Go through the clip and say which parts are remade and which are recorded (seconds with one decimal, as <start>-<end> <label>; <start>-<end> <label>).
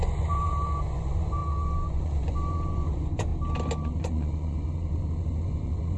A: 0.0-3.3 remade; 3.3-3.8 recorded; 3.8-6.0 remade